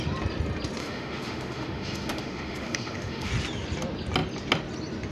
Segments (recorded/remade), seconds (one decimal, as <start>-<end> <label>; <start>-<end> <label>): 0.0-0.8 recorded; 0.8-3.3 remade; 3.3-5.1 recorded